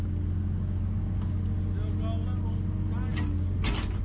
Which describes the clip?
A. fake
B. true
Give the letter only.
B